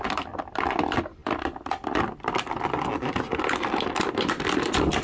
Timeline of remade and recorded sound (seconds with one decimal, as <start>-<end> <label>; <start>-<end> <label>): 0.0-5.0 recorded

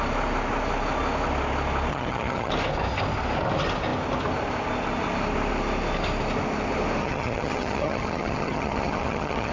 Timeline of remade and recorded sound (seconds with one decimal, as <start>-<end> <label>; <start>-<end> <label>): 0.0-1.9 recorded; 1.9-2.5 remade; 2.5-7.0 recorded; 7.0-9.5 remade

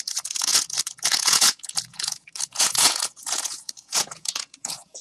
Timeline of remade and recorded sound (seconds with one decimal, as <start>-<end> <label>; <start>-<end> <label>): 0.0-5.0 remade

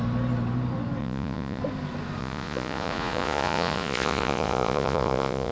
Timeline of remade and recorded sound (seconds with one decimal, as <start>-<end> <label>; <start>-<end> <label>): 0.0-1.0 recorded; 1.0-1.6 remade; 1.6-2.2 recorded; 2.2-5.5 remade

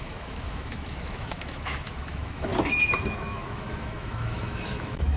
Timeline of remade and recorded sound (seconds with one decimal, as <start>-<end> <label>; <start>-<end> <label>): 0.0-2.5 remade; 2.5-3.0 recorded; 3.0-5.2 remade

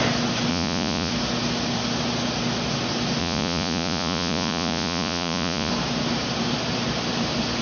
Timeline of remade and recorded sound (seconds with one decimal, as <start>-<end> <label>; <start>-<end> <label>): 0.0-0.5 recorded; 0.5-1.1 remade; 1.1-3.2 recorded; 3.2-5.7 remade; 5.7-7.6 recorded

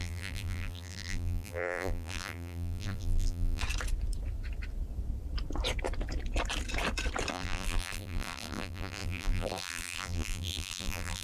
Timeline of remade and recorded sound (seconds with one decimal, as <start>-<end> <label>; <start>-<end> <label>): 0.0-3.6 remade; 3.6-7.3 recorded; 7.3-11.2 remade